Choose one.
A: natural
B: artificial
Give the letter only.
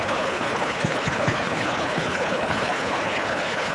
B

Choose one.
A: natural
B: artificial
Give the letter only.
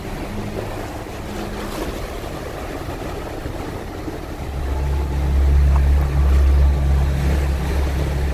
A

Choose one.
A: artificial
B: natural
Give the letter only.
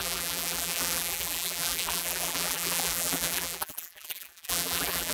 A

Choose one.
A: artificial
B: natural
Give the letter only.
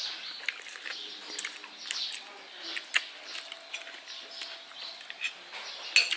B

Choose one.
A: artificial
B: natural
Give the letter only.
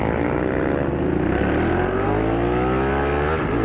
B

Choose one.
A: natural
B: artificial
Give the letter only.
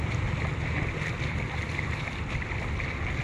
A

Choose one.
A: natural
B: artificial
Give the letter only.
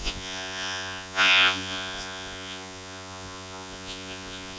B